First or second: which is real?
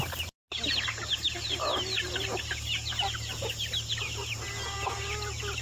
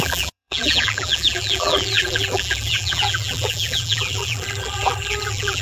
first